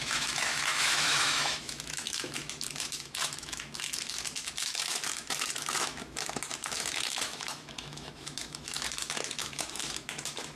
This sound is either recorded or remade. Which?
remade